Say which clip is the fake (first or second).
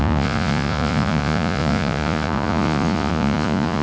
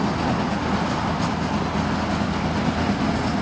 first